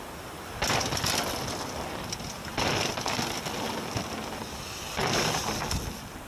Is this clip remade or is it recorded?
recorded